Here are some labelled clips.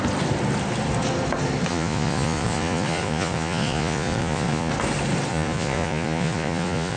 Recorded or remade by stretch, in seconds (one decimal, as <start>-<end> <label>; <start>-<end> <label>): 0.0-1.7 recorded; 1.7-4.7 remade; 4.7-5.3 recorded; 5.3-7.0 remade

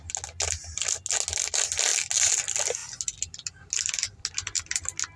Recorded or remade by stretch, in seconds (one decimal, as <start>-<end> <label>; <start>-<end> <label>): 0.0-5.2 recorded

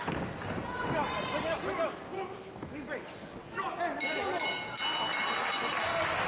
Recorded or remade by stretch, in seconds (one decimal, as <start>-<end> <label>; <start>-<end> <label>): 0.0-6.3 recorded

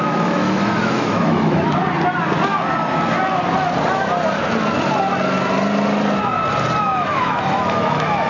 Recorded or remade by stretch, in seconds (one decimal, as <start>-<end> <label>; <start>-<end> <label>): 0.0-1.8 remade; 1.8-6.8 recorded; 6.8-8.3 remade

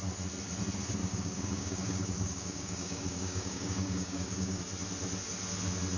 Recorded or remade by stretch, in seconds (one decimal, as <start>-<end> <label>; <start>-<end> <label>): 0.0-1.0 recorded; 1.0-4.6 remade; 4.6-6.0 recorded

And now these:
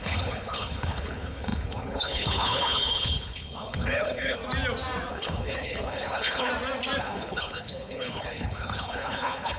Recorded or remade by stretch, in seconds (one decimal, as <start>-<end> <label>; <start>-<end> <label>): 0.0-4.4 remade; 4.4-5.1 recorded; 5.1-6.5 remade; 6.5-7.0 recorded; 7.0-9.6 remade